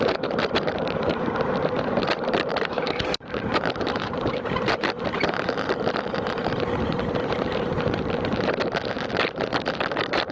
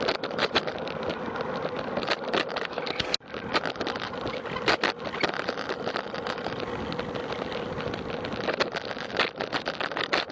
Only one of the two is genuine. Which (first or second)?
second